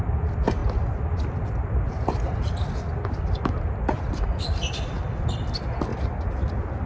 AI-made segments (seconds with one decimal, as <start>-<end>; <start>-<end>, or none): none